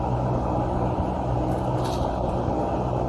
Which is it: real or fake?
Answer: real